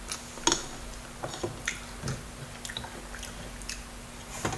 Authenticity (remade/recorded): recorded